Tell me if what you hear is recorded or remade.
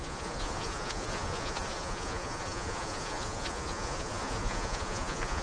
remade